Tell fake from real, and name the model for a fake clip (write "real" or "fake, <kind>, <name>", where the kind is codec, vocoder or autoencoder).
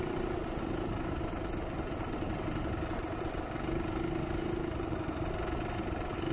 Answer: real